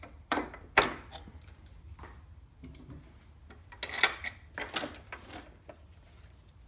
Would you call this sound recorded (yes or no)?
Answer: yes